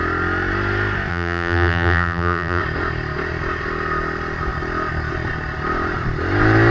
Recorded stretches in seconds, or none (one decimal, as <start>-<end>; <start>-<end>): 0.0-1.1; 2.6-6.7